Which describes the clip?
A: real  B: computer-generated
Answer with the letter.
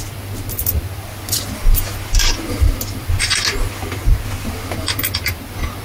A